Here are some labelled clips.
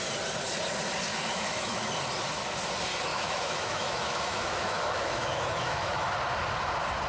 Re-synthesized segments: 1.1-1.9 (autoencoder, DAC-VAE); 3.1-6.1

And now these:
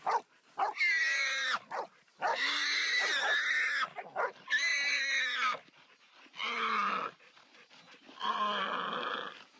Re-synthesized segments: 1.4-3.6 (vocoder, BigVGAN v2); 4.7-5.9

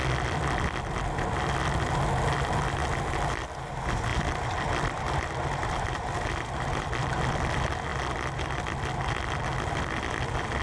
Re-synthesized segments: 4.1-7.2 (vocoder, BigVGAN v2); 7.9-8.6

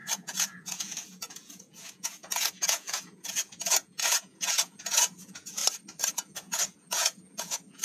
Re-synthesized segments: 0.0-5.6 (vocoder, Vocos); 6.1-7.8

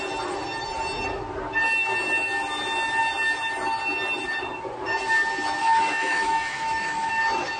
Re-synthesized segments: 5.6-7.1 (autoencoder, DAC-VAE)

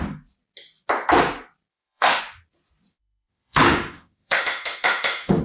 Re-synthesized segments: 1.7-2.2 (autoencoder, DAC-VAE); 2.9-5.4